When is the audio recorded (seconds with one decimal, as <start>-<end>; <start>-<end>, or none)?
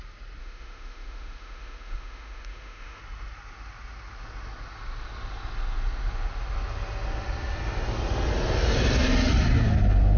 0.0-0.4; 3.0-10.2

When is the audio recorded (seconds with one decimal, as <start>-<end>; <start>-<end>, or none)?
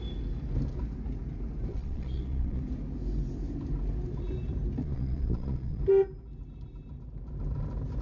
0.0-1.7; 2.6-4.8; 5.8-8.0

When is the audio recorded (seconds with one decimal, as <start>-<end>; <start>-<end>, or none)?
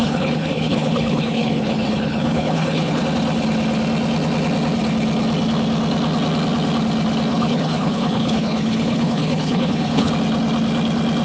3.0-7.3; 10.1-11.2